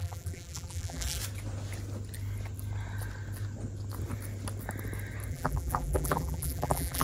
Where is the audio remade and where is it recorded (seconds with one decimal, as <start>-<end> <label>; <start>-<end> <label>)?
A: 0.0-1.2 remade; 1.2-5.3 recorded; 5.3-7.0 remade